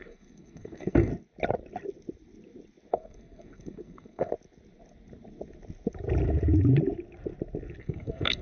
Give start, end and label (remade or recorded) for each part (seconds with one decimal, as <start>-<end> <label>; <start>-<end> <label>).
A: 0.0-1.1 remade; 1.1-2.9 recorded; 2.9-4.3 remade; 4.3-7.8 recorded; 7.8-8.4 remade